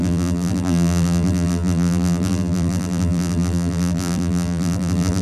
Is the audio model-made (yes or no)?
yes